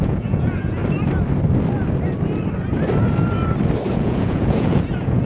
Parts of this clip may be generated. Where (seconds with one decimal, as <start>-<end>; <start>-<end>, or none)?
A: 0.0-0.8; 3.9-5.2

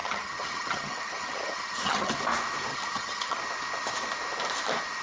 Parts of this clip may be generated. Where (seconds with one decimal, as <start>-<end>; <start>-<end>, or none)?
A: 0.0-2.2; 2.7-3.4

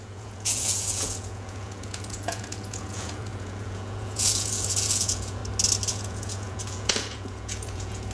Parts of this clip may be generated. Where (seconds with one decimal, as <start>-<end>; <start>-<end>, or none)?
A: 0.0-5.4; 5.9-8.1

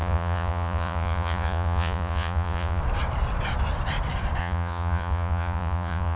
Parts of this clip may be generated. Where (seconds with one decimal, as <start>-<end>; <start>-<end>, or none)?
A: 0.0-2.8; 4.4-6.2